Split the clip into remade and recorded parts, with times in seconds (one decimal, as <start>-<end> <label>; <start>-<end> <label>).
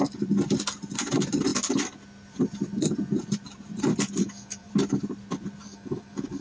0.0-4.2 recorded; 4.2-4.7 remade; 4.7-5.6 recorded; 5.6-6.4 remade